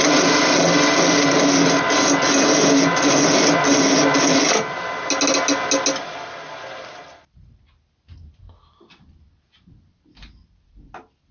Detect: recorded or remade recorded